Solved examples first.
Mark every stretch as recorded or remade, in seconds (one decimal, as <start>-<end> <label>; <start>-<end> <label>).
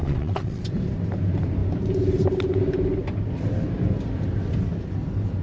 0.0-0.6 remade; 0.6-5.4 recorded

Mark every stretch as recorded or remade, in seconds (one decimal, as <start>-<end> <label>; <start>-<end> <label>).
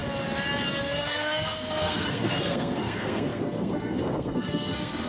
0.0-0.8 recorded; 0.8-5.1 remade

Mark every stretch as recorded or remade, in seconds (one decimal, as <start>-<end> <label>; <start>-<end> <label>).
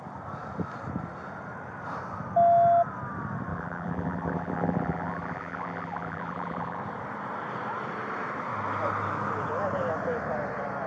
0.0-3.5 recorded; 3.5-6.8 remade; 6.8-10.9 recorded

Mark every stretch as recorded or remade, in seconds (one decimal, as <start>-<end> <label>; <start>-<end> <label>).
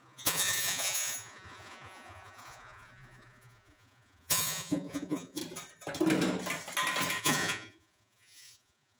0.0-5.4 remade; 5.4-7.2 recorded; 7.2-9.0 remade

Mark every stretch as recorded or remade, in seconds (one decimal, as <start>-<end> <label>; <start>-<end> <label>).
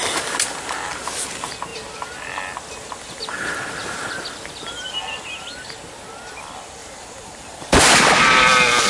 0.0-8.9 recorded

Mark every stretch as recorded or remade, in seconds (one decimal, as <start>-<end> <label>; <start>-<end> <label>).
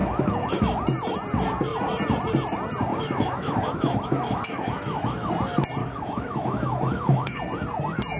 0.0-0.5 remade; 0.5-2.9 recorded; 2.9-5.3 remade; 5.3-5.8 recorded; 5.8-7.4 remade; 7.4-8.2 recorded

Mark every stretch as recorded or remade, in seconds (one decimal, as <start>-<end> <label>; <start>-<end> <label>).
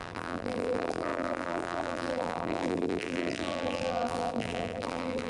0.0-5.3 remade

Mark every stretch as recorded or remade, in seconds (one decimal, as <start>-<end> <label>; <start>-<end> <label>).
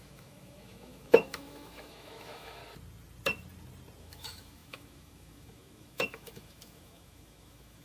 0.0-2.6 remade; 2.6-4.0 recorded; 4.0-7.8 remade